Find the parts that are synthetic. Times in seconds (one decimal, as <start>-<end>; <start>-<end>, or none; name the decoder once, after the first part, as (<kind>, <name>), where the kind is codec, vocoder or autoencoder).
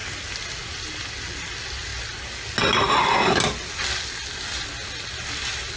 none